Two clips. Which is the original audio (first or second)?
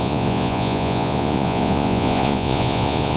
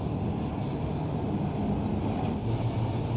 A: second